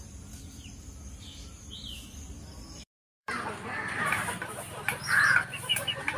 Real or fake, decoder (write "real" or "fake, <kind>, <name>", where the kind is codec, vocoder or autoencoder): fake, vocoder, BigVGAN v2